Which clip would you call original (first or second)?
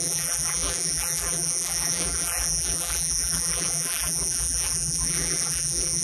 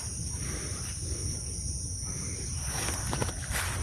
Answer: second